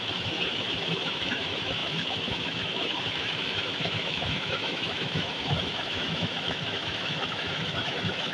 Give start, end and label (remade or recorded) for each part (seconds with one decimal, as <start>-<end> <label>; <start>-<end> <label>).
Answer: 0.0-8.3 remade